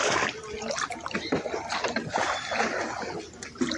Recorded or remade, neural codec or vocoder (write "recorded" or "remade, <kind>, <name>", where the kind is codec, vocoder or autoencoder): recorded